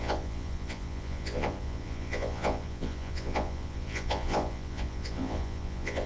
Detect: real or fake fake